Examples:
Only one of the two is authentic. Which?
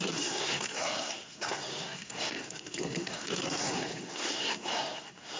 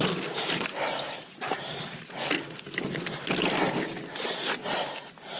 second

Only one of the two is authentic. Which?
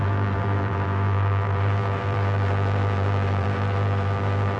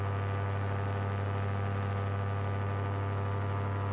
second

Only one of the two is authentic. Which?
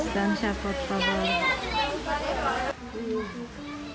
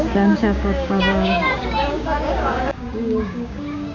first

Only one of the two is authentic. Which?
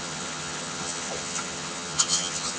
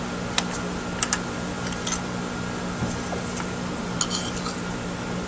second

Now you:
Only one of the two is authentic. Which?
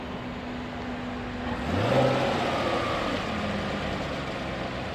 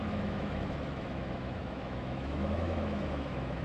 first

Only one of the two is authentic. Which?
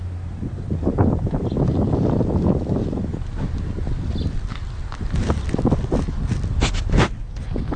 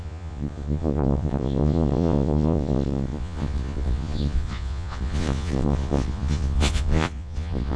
first